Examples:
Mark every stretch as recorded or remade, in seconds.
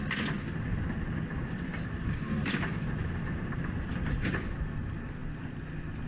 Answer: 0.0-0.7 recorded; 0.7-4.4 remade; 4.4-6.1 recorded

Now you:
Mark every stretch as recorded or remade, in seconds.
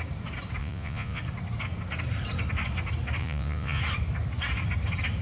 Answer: 0.0-0.6 recorded; 0.6-1.2 remade; 1.2-3.2 recorded; 3.2-3.8 remade; 3.8-5.2 recorded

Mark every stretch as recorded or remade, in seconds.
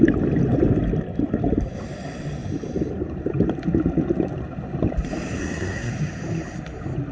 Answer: 0.0-5.4 recorded; 5.4-5.9 remade; 5.9-7.1 recorded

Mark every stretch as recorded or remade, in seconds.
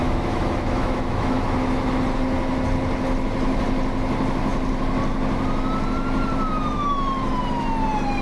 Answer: 0.0-1.4 remade; 1.4-8.2 recorded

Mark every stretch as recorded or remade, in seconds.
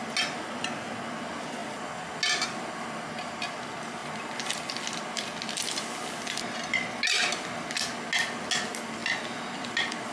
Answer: 0.0-10.1 recorded